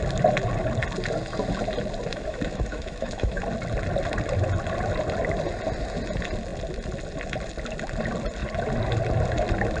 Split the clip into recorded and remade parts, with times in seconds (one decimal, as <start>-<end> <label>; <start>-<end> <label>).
0.0-2.1 recorded; 2.1-3.4 remade; 3.4-9.8 recorded